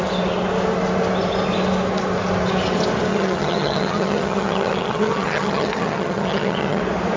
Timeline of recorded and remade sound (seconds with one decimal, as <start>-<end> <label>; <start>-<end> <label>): 0.0-3.1 recorded; 3.1-6.8 remade; 6.8-7.2 recorded